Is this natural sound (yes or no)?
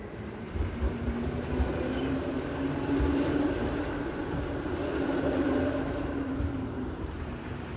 no